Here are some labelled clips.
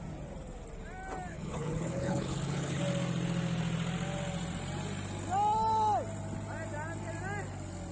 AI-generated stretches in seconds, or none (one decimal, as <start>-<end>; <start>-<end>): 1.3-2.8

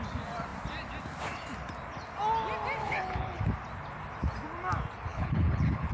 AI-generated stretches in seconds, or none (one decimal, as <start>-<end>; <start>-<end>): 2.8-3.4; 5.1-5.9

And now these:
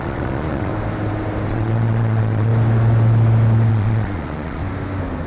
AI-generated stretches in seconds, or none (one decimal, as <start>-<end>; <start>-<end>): 0.0-0.7; 1.5-2.5; 3.7-4.6

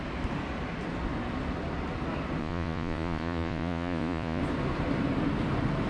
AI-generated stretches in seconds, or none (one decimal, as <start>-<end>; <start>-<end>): 2.4-4.4